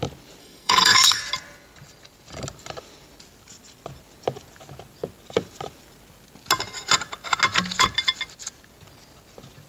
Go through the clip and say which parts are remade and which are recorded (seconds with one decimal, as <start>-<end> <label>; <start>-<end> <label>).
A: 0.0-0.4 recorded; 0.4-1.2 remade; 1.2-9.7 recorded